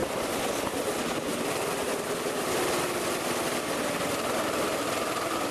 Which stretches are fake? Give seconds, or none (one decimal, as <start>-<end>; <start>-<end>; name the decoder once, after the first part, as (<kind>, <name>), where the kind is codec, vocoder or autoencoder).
none